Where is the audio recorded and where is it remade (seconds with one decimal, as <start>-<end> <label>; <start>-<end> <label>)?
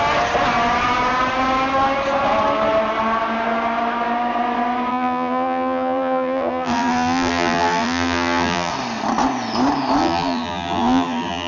0.0-4.9 recorded; 4.9-8.7 remade; 8.7-10.0 recorded; 10.0-11.5 remade